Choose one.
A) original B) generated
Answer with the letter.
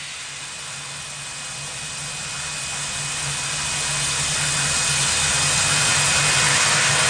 A